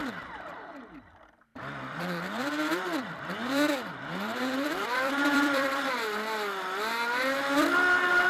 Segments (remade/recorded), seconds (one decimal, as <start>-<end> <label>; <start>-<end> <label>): 0.0-1.5 recorded; 1.5-5.9 remade; 5.9-8.3 recorded